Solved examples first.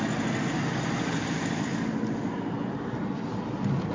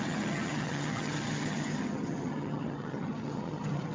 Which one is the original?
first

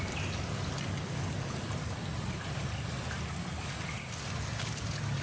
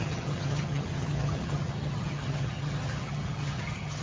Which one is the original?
first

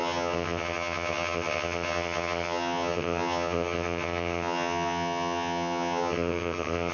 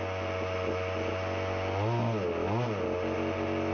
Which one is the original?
second